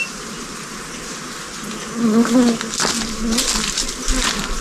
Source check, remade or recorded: recorded